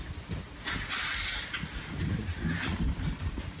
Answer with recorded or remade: recorded